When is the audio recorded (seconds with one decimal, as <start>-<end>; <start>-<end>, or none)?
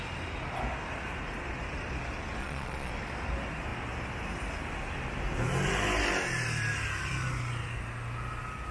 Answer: 0.0-2.4; 2.9-8.7